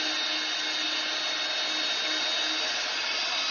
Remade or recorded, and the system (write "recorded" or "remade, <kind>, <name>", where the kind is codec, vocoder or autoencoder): recorded